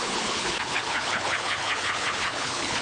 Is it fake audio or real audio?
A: fake